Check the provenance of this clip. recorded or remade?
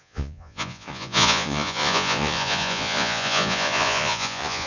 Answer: remade